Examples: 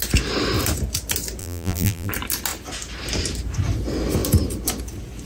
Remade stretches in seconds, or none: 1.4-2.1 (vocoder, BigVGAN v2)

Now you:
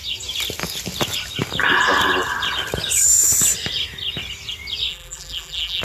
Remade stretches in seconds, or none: 4.9-5.8 (vocoder, BigVGAN v2)

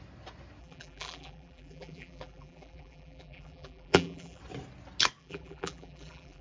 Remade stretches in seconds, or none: 0.6-4.4 (vocoder, BigVGAN v2); 5.2-6.4

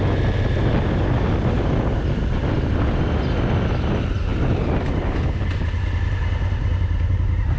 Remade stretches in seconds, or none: none

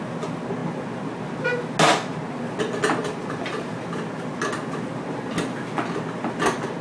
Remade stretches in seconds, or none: 3.0-3.7 (vocoder, BigVGAN v2)

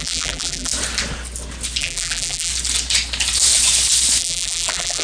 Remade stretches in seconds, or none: 0.0-0.7 (vocoder, BigVGAN v2); 1.8-2.5; 4.2-5.0